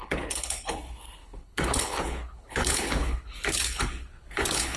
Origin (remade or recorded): remade